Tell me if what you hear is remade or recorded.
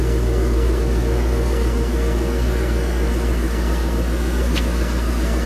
remade